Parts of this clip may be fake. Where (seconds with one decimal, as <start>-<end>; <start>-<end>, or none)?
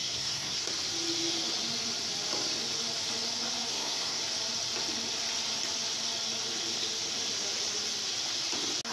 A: 0.0-0.7; 3.7-4.2